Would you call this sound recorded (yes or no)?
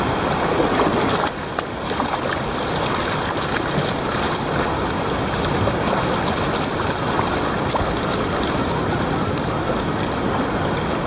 yes